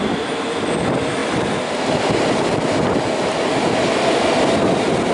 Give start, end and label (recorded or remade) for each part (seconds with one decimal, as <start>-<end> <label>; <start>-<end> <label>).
0.0-5.1 recorded